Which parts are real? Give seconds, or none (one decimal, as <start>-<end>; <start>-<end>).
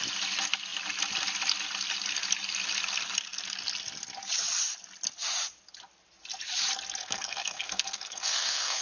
0.0-7.0